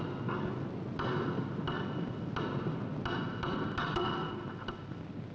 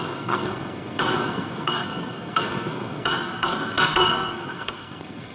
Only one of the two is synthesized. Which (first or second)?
second